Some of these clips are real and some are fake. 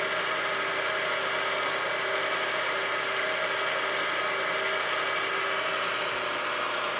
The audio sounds real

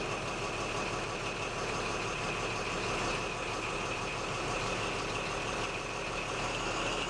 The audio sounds real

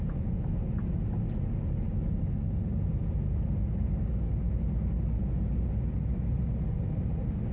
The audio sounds real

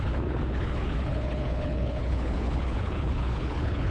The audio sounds fake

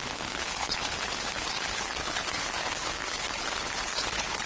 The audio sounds fake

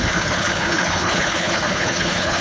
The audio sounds fake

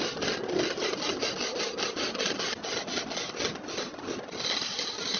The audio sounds real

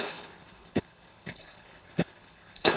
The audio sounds fake